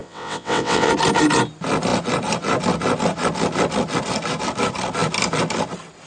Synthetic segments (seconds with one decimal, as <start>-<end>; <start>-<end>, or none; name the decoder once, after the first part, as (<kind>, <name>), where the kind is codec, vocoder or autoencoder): 0.0-0.9 (vocoder, WaveNeXt)